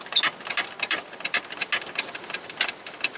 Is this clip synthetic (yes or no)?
no